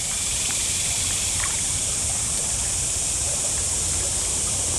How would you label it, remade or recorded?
remade